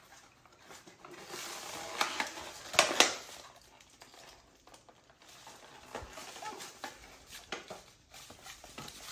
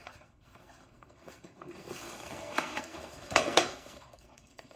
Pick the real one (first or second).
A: first